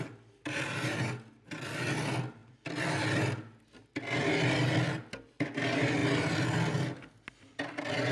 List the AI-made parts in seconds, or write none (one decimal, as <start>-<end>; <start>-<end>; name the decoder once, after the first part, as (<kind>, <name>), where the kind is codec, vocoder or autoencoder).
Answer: none